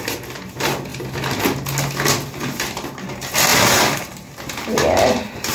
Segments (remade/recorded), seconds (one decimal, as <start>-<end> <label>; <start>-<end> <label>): 0.0-5.5 recorded

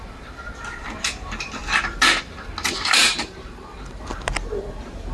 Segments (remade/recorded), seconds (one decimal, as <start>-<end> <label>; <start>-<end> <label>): 0.0-3.0 recorded; 3.0-4.0 remade; 4.0-5.1 recorded

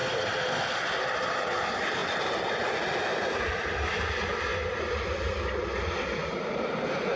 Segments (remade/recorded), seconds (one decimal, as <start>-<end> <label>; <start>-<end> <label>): 0.0-7.2 recorded

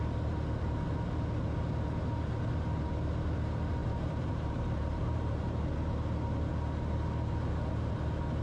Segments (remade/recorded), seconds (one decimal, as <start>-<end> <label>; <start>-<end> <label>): 0.0-3.8 recorded; 3.8-5.8 remade; 5.8-8.4 recorded

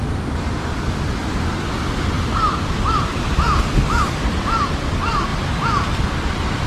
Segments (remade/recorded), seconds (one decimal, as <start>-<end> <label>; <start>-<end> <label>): 0.0-1.2 remade; 1.2-4.3 recorded; 4.3-6.7 remade

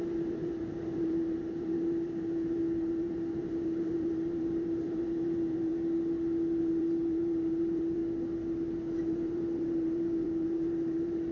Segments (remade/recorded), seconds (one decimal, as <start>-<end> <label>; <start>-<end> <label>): 0.0-5.7 remade; 5.7-6.6 recorded; 6.6-8.0 remade; 8.0-9.0 recorded; 9.0-11.3 remade

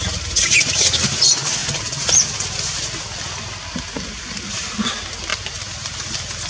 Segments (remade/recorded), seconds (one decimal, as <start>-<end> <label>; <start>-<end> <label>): 0.0-6.5 recorded

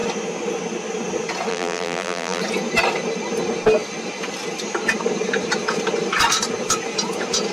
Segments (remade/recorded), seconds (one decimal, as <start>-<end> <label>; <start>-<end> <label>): 0.0-1.5 recorded; 1.5-2.4 remade; 2.4-7.5 recorded